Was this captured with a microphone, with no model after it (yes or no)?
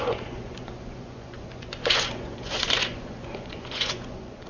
no